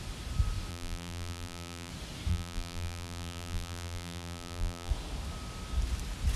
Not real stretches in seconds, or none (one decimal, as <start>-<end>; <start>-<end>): 0.7-1.9; 2.3-4.9